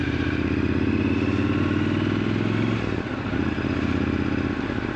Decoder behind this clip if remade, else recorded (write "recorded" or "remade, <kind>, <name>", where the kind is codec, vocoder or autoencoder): recorded